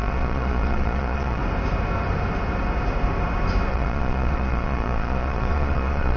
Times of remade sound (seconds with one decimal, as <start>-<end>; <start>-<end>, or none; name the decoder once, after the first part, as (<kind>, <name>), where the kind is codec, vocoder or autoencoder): 0.0-1.4 (vocoder, Vocos); 3.7-6.2